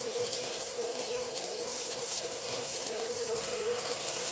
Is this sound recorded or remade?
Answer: remade